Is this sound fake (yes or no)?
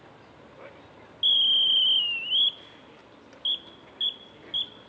no